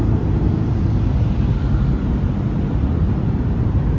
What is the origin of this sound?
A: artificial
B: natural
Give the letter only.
B